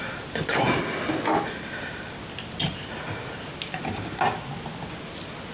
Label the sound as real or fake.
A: real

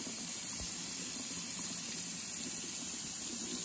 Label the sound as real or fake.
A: real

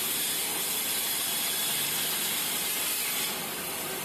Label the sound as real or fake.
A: fake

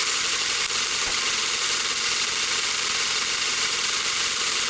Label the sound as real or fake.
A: fake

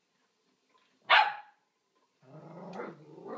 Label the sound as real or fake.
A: real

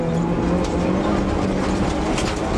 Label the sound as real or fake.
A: real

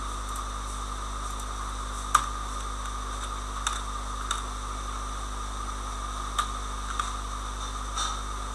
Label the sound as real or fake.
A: real